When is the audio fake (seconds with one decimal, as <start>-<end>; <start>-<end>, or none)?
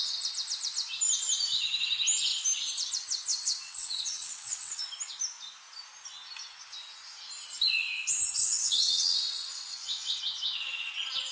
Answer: 3.3-4.8; 8.4-10.2